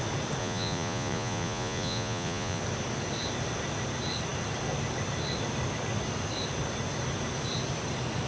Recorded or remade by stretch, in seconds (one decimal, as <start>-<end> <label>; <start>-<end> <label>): 0.0-0.4 recorded; 0.4-2.6 remade; 2.6-8.3 recorded